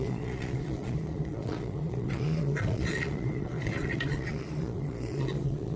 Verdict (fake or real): fake